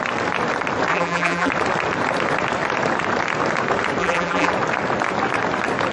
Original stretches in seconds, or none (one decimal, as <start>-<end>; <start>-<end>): 0.0-0.9; 1.5-4.0; 4.5-5.9